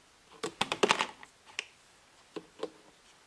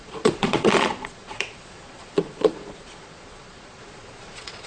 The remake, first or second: second